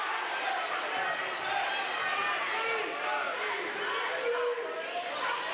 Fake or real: real